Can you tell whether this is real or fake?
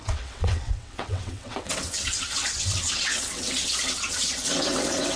fake